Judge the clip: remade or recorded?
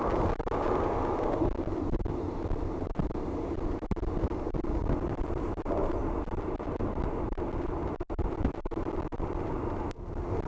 recorded